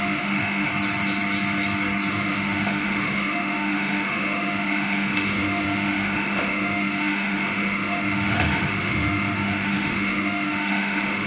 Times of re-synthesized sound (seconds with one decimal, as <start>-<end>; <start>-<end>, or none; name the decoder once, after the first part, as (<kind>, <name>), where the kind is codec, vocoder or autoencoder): 0.0-0.7 (autoencoder, DAC-VAE); 2.1-11.3

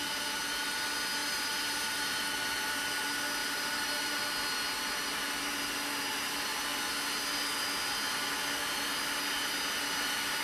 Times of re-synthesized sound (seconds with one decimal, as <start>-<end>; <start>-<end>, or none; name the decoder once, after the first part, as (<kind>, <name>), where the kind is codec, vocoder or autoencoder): 1.2-2.0 (vocoder, BigVGAN v2); 3.4-4.2